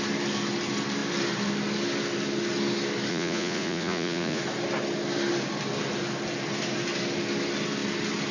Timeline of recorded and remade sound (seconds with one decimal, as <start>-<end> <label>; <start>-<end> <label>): 0.0-3.1 recorded; 3.1-4.4 remade; 4.4-8.3 recorded